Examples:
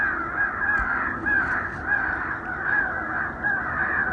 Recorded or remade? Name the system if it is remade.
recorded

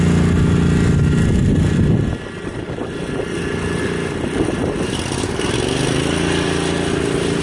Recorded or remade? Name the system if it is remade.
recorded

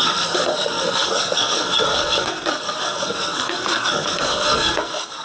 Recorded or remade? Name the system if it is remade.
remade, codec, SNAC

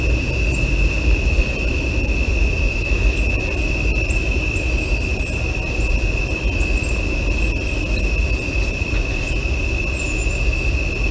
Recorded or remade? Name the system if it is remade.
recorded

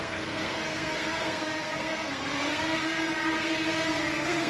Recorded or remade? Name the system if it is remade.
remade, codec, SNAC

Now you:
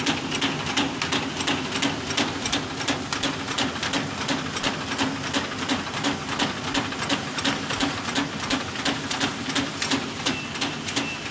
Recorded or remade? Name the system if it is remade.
recorded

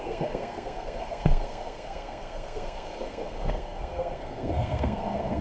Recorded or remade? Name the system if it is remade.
remade, codec, SNAC